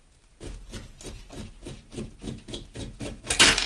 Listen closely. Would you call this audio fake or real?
real